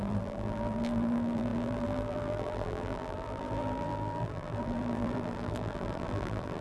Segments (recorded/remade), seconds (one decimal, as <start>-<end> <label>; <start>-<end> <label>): 0.0-6.6 remade